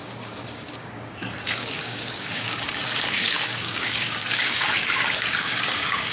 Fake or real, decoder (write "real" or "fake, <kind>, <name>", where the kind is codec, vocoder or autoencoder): fake, codec, DAC